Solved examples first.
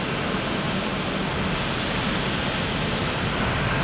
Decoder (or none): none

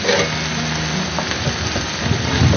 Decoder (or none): none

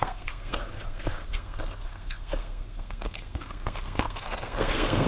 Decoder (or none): codec, SNAC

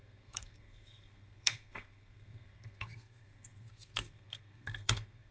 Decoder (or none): codec, SNAC